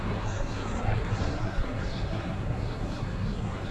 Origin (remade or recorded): remade